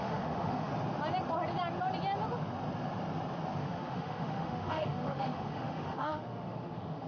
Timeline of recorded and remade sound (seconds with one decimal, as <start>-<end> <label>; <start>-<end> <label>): 0.0-0.7 remade; 0.7-3.6 recorded; 3.6-7.1 remade